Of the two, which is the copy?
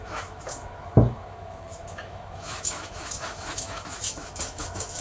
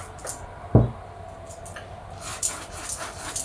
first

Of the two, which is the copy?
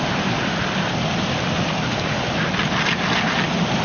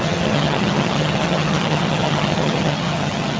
second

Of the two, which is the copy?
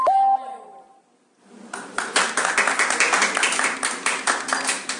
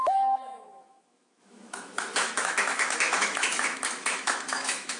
second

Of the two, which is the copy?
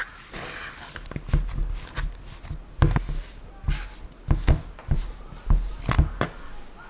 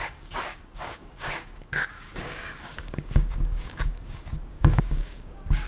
second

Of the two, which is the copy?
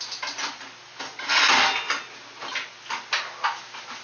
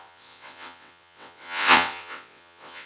second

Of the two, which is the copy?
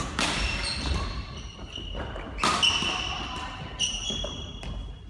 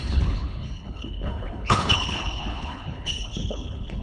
second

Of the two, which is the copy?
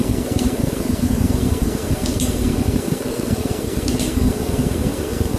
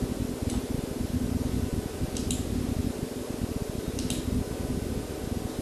first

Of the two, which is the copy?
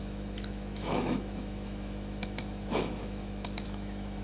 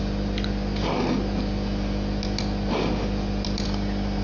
first